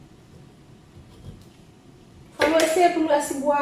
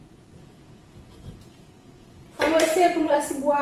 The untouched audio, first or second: first